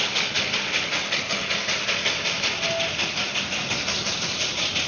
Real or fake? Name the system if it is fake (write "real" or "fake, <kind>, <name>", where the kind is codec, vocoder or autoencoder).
real